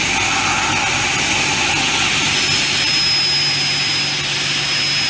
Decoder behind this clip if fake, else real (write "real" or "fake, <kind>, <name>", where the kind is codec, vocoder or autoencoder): real